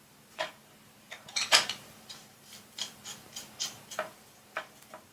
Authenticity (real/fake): fake